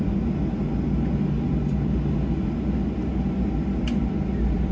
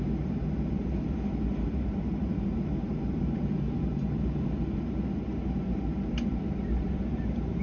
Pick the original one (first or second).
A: first